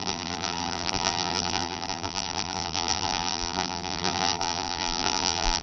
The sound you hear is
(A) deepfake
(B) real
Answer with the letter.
A